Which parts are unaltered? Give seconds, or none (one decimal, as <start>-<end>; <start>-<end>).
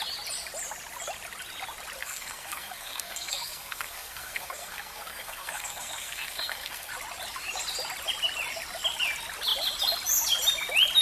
0.0-2.0; 6.9-11.0